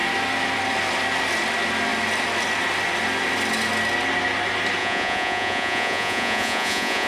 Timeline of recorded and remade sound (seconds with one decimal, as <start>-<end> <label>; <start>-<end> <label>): 0.0-4.8 recorded; 4.8-7.1 remade